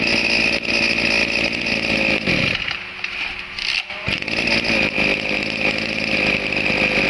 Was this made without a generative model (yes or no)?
yes